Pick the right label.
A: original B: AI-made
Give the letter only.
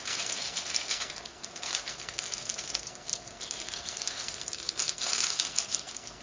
B